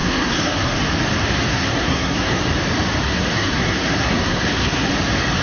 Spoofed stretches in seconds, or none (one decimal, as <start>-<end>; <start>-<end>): 0.0-0.8; 1.5-2.4; 3.0-4.9

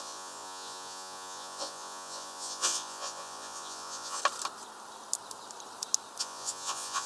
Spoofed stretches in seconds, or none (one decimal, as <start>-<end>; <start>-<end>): 0.0-4.2; 6.2-7.1

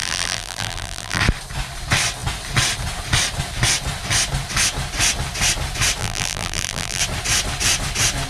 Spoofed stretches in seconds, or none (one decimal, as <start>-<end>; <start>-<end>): 0.0-1.2; 6.0-7.0